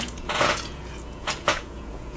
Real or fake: fake